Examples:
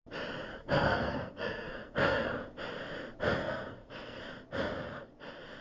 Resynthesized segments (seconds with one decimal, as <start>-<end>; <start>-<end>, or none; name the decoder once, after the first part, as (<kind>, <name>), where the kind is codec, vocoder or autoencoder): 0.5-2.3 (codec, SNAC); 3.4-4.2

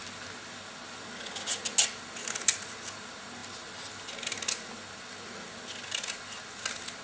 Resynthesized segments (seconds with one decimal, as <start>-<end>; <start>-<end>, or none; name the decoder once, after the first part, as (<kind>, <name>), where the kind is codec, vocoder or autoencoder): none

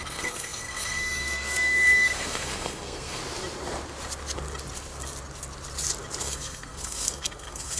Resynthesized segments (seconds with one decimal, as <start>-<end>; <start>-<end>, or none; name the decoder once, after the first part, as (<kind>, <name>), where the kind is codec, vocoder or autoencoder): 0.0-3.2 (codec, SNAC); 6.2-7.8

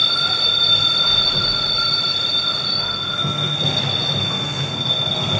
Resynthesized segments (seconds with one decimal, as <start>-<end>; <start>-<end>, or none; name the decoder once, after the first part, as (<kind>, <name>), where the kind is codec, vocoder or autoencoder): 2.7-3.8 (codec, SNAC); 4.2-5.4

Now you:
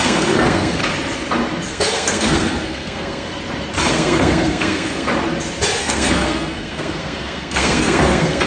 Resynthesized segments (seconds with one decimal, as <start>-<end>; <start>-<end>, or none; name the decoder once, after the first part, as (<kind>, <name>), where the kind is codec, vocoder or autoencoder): 0.0-0.8 (codec, SNAC); 1.7-3.3; 3.9-5.1; 5.8-8.5

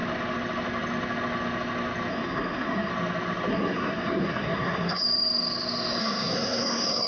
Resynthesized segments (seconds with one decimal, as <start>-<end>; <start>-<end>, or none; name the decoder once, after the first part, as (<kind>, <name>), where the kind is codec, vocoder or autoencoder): 2.1-2.9 (codec, SNAC); 3.5-5.0; 6.0-7.1

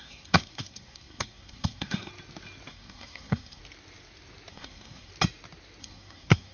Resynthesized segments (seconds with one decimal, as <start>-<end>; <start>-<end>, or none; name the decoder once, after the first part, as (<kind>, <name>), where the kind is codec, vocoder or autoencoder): 0.0-2.1 (codec, SNAC); 2.7-3.6; 4.5-5.1; 5.8-6.5